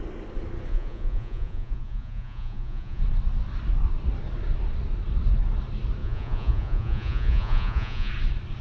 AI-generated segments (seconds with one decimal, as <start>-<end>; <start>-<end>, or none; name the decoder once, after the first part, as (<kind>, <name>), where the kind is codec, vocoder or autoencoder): 0.7-3.0 (vocoder, Vocos); 6.0-8.1

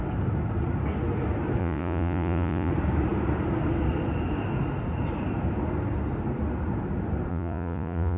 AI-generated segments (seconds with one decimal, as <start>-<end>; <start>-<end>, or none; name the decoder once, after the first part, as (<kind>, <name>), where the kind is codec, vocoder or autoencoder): 1.6-2.7 (vocoder, Vocos); 7.3-8.2

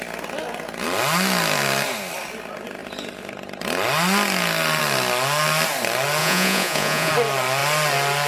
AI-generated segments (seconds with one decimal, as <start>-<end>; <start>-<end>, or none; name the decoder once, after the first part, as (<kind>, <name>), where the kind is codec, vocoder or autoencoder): 6.2-7.1 (vocoder, Vocos)

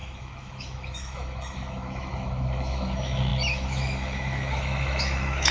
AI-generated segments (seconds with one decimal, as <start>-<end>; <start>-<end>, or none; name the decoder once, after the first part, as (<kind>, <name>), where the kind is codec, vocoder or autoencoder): 0.0-5.5 (autoencoder, DAC-VAE)

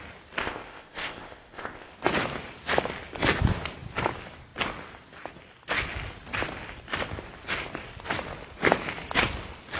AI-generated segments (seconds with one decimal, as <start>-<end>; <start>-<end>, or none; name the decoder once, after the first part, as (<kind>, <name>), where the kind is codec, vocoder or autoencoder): 0.4-1.9 (codec, ZipCodec)

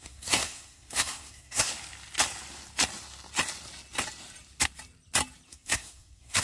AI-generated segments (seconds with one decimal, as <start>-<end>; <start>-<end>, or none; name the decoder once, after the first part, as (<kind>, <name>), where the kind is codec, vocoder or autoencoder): 0.0-1.7 (codec, SNAC); 5.5-6.4

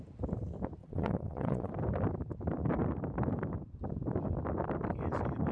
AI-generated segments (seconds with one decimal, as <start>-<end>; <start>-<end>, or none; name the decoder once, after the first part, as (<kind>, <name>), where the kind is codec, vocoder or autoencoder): 0.8-1.7 (vocoder, WaveNeXt)